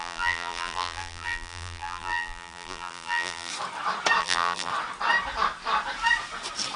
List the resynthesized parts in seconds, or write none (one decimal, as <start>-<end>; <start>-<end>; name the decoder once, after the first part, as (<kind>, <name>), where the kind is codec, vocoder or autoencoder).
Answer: 0.0-3.5 (vocoder, BigVGAN v2); 4.2-4.7